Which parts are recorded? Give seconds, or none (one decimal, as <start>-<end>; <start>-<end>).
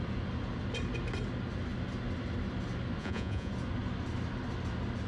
0.0-3.0; 3.5-5.1